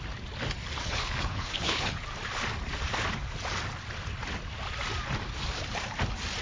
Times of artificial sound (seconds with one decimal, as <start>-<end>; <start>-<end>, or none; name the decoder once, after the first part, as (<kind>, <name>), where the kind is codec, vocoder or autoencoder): 0.8-2.0 (codec, HILCodec)